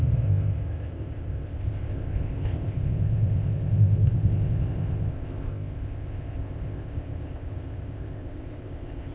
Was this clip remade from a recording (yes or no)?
yes